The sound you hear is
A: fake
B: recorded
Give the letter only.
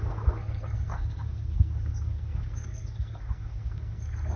A